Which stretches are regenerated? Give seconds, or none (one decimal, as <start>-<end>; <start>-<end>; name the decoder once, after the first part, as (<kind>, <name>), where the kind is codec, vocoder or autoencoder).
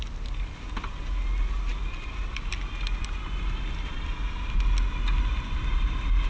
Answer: none